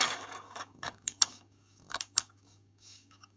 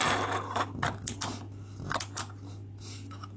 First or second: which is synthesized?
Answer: first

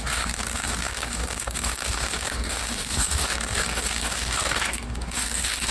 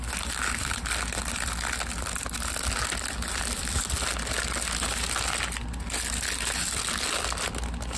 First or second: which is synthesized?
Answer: first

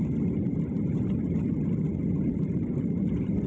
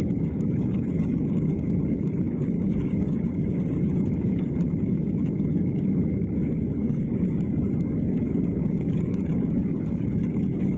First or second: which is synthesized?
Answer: second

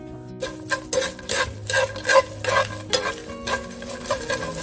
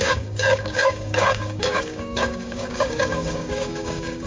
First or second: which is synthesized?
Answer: second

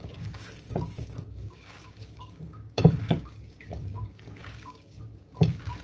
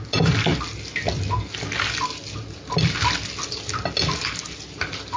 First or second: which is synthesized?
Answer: first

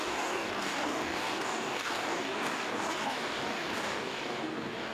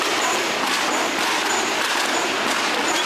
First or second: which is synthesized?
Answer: first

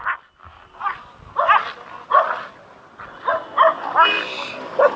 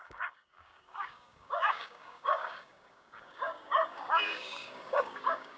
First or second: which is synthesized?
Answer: second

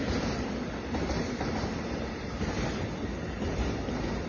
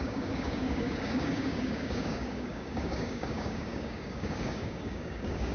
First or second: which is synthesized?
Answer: second